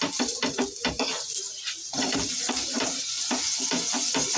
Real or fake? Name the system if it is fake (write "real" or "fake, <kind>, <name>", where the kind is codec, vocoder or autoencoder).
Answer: real